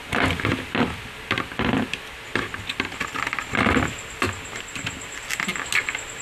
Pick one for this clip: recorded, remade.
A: recorded